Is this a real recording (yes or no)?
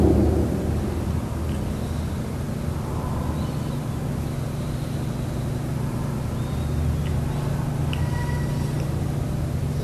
yes